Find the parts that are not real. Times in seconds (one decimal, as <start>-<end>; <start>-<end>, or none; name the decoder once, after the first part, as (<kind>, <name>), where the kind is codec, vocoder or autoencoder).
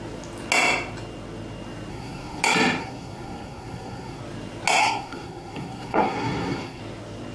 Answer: 1.9-2.4 (codec, SNAC); 2.8-4.2; 4.8-6.8